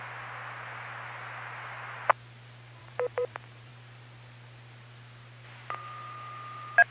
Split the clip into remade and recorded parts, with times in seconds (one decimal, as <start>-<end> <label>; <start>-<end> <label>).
0.0-2.8 recorded; 2.8-3.7 remade; 3.7-6.9 recorded